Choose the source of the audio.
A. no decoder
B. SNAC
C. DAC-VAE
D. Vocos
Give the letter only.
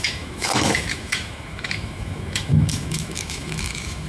C